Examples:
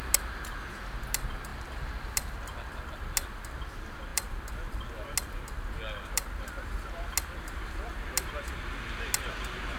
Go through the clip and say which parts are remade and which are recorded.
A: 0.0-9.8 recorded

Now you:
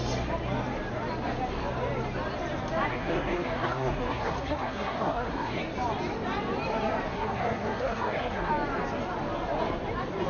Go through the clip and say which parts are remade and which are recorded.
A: 0.0-2.9 recorded; 2.9-5.6 remade; 5.6-7.1 recorded; 7.1-8.5 remade; 8.5-10.3 recorded

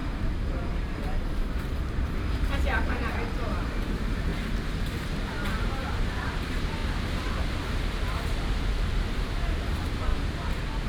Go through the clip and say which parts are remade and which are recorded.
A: 0.0-4.3 remade; 4.3-5.3 recorded; 5.3-6.8 remade; 6.8-7.4 recorded; 7.4-10.1 remade; 10.1-10.9 recorded

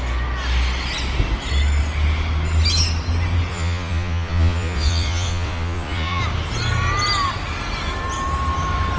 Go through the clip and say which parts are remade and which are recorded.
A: 0.0-3.5 recorded; 3.5-6.2 remade; 6.2-9.0 recorded

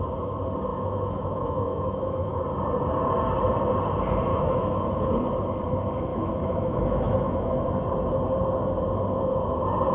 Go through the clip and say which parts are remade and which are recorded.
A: 0.0-0.7 recorded; 0.7-2.4 remade; 2.4-4.3 recorded; 4.3-5.1 remade; 5.1-6.1 recorded; 6.1-7.6 remade; 7.6-9.9 recorded

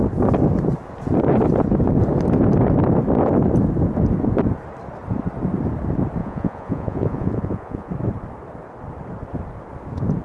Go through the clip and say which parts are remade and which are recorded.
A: 0.0-6.2 recorded; 6.2-7.9 remade; 7.9-10.2 recorded

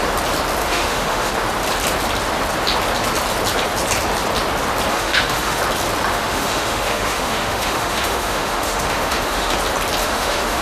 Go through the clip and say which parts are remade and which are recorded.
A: 0.0-0.6 recorded; 0.6-1.3 remade; 1.3-4.9 recorded; 4.9-5.6 remade; 5.6-6.1 recorded; 6.1-9.5 remade; 9.5-10.0 recorded; 10.0-10.6 remade

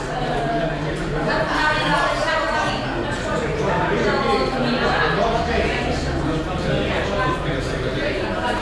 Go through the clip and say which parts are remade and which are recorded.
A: 0.0-1.9 remade; 1.9-5.0 recorded; 5.0-6.0 remade; 6.0-7.3 recorded; 7.3-8.6 remade